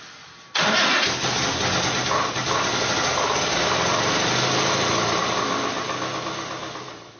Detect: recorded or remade recorded